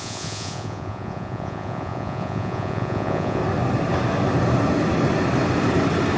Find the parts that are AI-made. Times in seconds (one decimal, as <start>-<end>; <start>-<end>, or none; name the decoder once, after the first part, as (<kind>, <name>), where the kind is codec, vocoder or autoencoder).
0.0-3.4 (vocoder, Vocos)